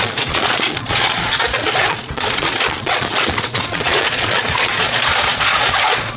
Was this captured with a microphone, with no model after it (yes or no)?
no